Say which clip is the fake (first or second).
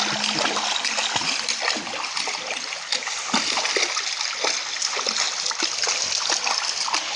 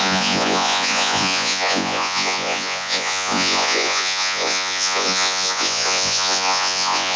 second